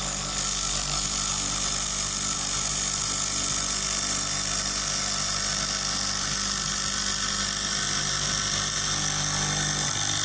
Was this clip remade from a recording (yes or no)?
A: no